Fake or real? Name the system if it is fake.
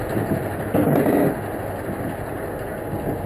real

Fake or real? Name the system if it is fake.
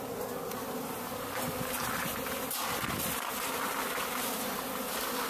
real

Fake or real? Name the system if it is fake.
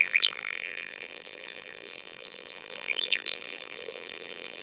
fake, vocoder, BigVGAN v2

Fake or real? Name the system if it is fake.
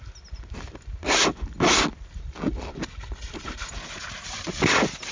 real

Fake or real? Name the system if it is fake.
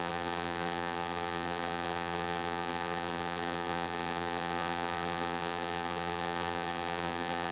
fake, vocoder, BigVGAN v2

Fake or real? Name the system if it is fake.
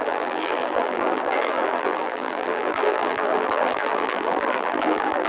fake, vocoder, BigVGAN v2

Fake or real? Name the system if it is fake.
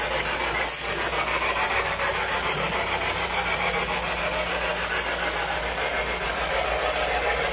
fake, vocoder, BigVGAN v2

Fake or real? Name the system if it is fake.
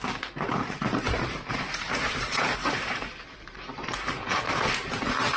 fake, vocoder, BigVGAN v2